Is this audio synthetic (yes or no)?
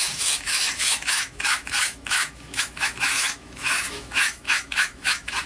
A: yes